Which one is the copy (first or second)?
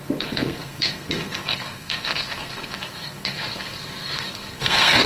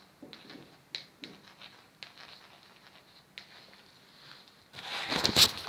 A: first